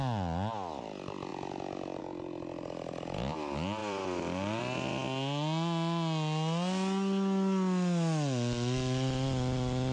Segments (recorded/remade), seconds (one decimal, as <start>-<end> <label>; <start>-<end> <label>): 0.0-3.8 recorded; 3.8-4.6 remade; 4.6-9.9 recorded